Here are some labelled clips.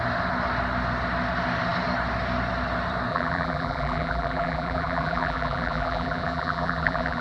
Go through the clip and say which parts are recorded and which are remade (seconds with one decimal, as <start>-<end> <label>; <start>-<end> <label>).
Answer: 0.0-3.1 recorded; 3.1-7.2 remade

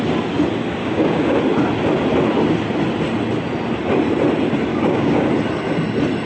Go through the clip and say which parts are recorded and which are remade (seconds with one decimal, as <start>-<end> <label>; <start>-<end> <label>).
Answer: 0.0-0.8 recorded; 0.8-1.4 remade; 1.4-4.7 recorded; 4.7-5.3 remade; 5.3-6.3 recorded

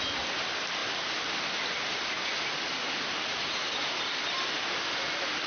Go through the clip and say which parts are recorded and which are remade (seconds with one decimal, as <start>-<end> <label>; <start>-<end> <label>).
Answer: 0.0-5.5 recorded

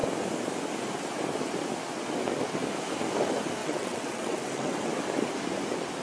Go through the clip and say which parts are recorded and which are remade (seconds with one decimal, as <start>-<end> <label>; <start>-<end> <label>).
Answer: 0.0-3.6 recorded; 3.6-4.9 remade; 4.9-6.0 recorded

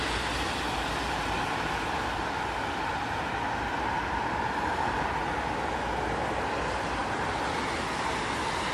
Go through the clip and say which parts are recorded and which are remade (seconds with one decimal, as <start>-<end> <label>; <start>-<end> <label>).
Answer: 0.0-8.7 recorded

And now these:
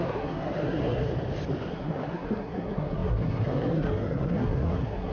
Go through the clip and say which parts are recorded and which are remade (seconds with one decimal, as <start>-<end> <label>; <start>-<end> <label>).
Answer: 0.0-1.1 remade; 1.1-1.7 recorded; 1.7-5.1 remade

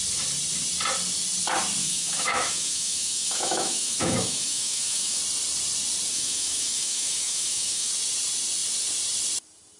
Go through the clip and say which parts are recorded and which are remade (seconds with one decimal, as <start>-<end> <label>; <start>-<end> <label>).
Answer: 0.0-1.8 recorded; 1.8-5.2 remade; 5.2-6.1 recorded; 6.1-7.9 remade; 7.9-9.8 recorded